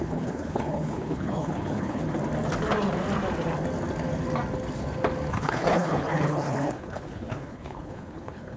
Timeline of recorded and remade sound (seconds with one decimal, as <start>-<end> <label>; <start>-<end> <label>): 0.0-2.0 remade; 2.0-5.3 recorded; 5.3-8.6 remade